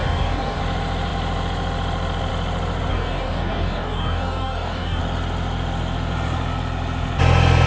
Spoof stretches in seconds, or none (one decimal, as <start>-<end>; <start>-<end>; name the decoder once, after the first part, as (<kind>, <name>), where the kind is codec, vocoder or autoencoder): 0.0-0.6 (codec, DAC); 2.9-5.0